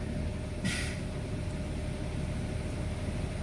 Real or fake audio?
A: real